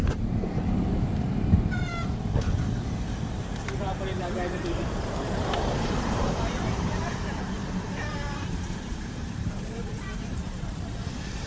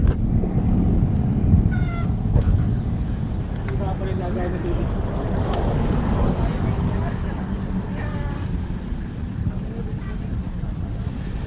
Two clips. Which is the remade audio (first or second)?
first